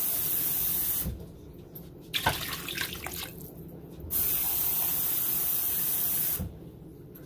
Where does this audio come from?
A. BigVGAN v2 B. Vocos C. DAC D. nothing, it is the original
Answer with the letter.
D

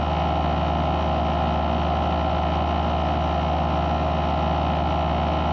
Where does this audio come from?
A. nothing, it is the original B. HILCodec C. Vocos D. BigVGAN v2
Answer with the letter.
A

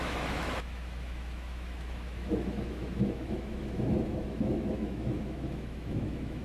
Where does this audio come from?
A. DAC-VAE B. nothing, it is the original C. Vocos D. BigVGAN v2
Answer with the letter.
A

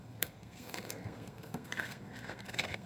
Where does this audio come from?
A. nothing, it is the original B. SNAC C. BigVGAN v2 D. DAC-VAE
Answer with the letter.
B